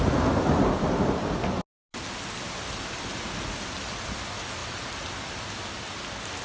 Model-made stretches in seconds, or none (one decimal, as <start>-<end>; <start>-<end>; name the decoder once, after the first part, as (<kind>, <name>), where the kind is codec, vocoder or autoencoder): none